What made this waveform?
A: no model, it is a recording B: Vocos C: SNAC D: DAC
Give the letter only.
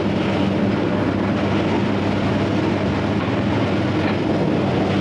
A